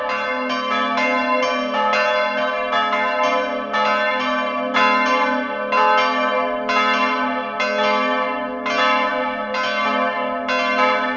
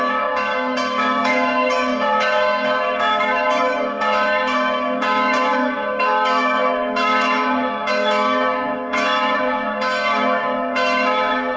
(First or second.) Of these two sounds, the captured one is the first